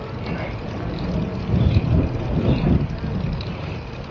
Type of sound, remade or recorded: recorded